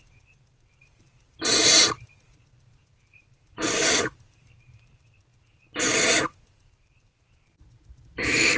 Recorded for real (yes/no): no